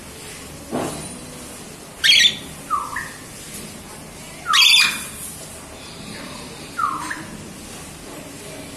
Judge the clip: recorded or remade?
recorded